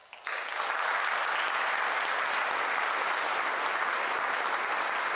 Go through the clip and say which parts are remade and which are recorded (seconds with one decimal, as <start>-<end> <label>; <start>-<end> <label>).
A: 0.0-5.2 recorded